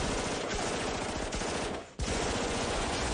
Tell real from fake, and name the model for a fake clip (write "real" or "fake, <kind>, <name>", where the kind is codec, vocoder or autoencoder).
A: fake, vocoder, Vocos